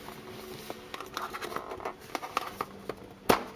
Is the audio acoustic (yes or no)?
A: yes